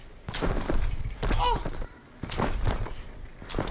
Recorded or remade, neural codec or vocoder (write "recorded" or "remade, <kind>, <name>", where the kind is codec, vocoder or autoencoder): remade, vocoder, BigVGAN v2